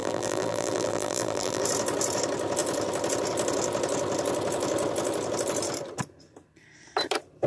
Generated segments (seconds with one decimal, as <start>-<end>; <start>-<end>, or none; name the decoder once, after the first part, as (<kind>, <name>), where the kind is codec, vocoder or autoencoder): 0.0-1.6 (vocoder, BigVGAN v2)